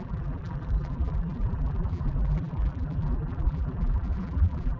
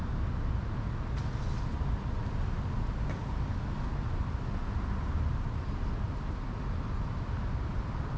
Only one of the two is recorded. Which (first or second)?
second